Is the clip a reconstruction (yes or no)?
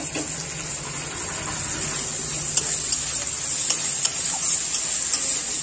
no